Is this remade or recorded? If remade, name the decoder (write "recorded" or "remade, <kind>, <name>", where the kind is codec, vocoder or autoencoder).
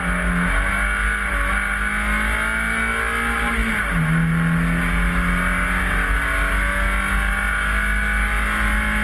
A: recorded